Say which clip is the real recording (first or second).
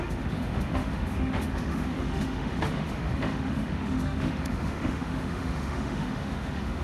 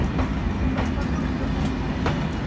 second